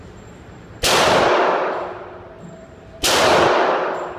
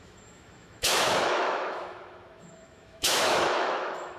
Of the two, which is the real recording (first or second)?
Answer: first